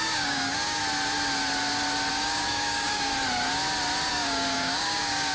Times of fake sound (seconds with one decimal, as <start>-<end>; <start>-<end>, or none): 0.0-0.8; 2.1-3.1; 4.1-5.3